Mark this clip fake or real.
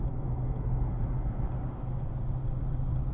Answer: real